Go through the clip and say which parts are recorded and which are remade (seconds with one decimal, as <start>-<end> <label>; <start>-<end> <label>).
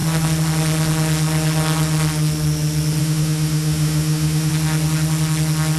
0.0-3.0 recorded; 3.0-4.5 remade; 4.5-5.8 recorded